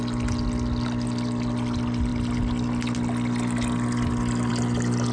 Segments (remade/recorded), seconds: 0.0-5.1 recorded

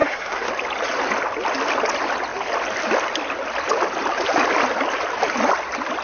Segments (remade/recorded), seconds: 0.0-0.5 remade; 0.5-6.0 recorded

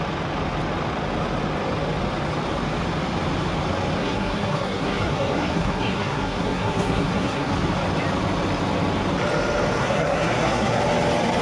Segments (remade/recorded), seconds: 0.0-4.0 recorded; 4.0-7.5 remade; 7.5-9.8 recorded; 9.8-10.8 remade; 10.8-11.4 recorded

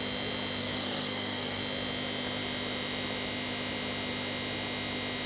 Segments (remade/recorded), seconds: 0.0-0.6 recorded; 0.6-1.6 remade; 1.6-5.3 recorded

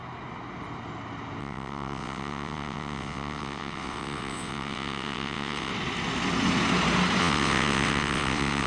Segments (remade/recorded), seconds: 0.0-1.4 recorded; 1.4-5.7 remade; 5.7-7.2 recorded; 7.2-8.7 remade

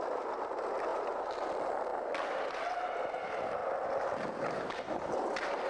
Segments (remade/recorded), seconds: 0.0-1.9 recorded; 1.9-2.6 remade; 2.6-3.6 recorded; 3.6-4.3 remade; 4.3-5.7 recorded

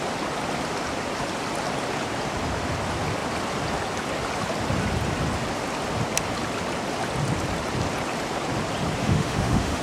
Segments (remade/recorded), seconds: 0.0-9.0 recorded; 9.0-9.8 remade